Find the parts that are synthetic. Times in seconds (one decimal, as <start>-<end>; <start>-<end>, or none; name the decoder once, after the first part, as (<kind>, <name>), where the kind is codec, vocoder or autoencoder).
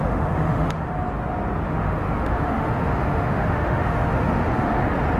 0.0-0.9 (autoencoder, DAC-VAE); 1.7-4.8